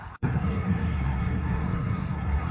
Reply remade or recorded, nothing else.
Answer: remade